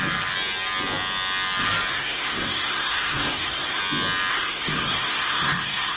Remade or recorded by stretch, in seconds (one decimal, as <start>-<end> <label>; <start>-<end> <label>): 0.0-1.9 recorded; 1.9-3.8 remade; 3.8-4.3 recorded; 4.3-6.0 remade